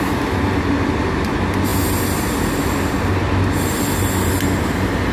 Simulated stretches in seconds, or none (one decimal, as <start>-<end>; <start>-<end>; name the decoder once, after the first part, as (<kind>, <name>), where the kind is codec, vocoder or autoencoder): none

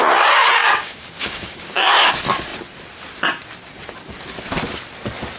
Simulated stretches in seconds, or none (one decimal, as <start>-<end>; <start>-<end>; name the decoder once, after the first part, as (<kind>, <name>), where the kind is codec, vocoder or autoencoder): 0.6-2.1 (codec, DAC)

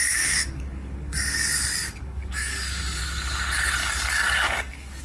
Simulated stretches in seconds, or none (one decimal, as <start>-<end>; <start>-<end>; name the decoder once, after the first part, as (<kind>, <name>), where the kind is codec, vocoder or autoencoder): 0.0-3.0 (codec, DAC); 3.8-5.0